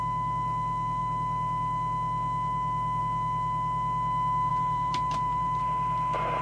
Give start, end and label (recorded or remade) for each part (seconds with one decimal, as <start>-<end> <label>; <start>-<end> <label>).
0.0-4.5 recorded; 4.5-5.6 remade; 5.6-6.4 recorded